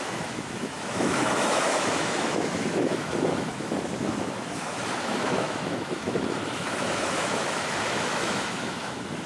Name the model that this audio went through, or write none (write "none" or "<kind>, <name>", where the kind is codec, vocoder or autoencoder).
autoencoder, DAC-VAE